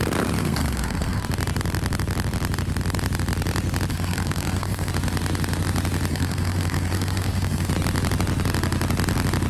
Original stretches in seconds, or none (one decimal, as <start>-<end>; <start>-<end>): 0.0-0.4; 1.2-3.9; 4.9-6.1; 7.7-9.5